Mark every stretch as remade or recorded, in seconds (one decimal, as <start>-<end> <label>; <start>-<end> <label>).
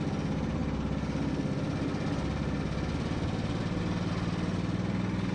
0.0-5.3 recorded